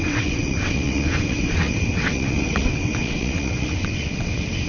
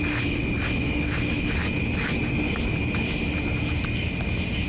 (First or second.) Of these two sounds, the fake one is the first